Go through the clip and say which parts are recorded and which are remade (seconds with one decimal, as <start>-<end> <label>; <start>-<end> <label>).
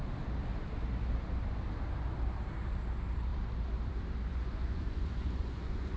0.0-4.3 recorded; 4.3-6.0 remade